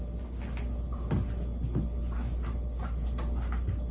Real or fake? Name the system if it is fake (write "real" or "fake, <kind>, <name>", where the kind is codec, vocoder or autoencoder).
real